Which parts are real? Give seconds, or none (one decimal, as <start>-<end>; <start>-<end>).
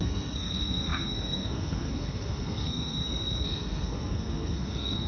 none